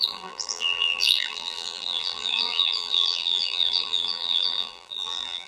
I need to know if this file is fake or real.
fake